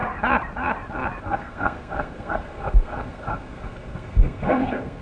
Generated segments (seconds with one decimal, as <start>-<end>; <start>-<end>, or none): 1.2-5.0